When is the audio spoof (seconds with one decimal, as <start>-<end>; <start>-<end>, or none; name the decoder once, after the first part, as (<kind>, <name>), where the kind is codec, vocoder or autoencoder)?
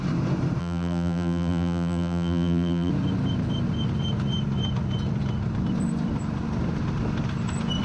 0.6-2.9 (vocoder, BigVGAN v2)